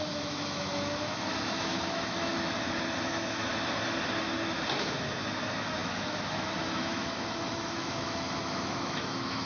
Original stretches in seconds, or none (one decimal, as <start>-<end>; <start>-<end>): 3.5-4.2